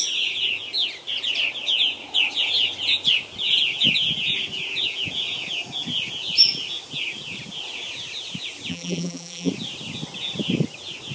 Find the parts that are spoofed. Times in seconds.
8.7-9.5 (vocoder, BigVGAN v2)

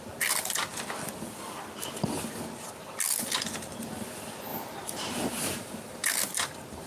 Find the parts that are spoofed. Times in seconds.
4.5-6.1 (vocoder, BigVGAN v2)

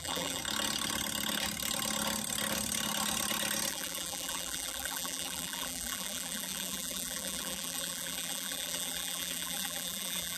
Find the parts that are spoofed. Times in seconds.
0.0-0.4 (vocoder, BigVGAN v2); 3.7-10.4

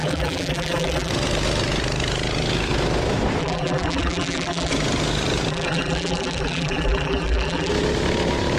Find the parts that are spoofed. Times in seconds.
0.0-1.1 (vocoder, BigVGAN v2); 3.4-4.7; 5.5-7.7